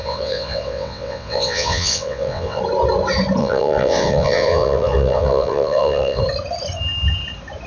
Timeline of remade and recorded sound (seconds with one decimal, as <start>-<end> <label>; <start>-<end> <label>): 0.0-2.6 remade; 2.6-3.4 recorded; 3.4-6.2 remade; 6.2-7.7 recorded